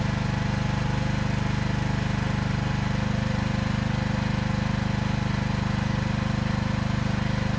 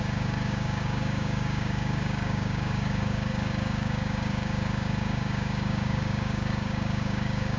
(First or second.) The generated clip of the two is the second